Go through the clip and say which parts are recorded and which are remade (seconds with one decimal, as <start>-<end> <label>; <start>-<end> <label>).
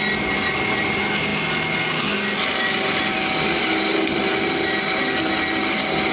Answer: 0.0-6.1 recorded